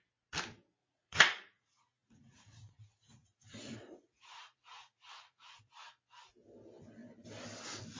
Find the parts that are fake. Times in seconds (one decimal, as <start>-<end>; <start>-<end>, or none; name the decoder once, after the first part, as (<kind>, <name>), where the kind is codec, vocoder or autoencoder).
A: 0.8-5.6 (vocoder, Vocos)